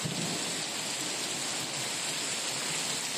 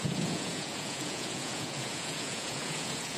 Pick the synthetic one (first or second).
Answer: second